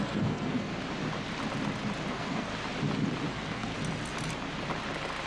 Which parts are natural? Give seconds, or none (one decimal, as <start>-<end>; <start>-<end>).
0.7-2.1; 2.5-3.3; 3.7-5.3